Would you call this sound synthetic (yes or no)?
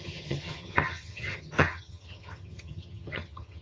yes